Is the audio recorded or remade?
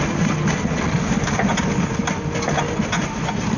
recorded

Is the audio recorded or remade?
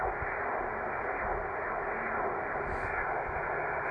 recorded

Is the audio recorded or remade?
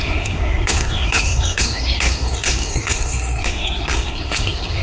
remade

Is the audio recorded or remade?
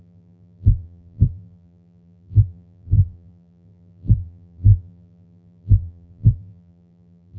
remade